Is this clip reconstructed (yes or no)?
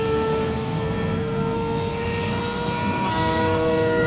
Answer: yes